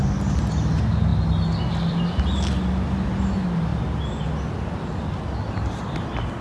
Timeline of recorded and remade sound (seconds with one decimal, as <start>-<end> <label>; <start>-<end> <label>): 0.0-6.4 recorded